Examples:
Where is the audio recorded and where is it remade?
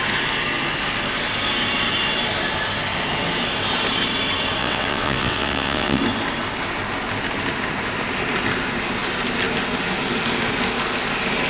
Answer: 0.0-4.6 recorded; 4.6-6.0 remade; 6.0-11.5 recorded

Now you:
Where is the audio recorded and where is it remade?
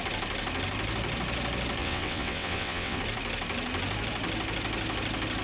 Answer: 0.0-1.8 recorded; 1.8-3.0 remade; 3.0-5.4 recorded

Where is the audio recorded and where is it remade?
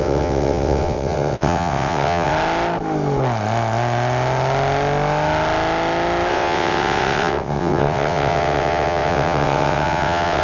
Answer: 0.0-2.3 remade; 2.3-6.3 recorded; 6.3-10.4 remade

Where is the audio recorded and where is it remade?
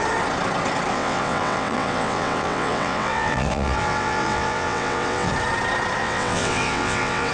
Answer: 0.0-0.9 recorded; 0.9-5.3 remade; 5.3-6.0 recorded; 6.0-7.3 remade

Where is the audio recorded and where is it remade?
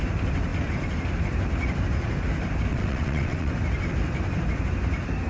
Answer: 0.0-2.7 recorded; 2.7-3.5 remade; 3.5-5.3 recorded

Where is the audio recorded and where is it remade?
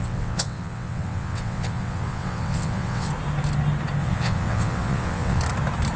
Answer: 0.0-3.1 remade; 3.1-4.0 recorded; 4.0-5.4 remade; 5.4-6.0 recorded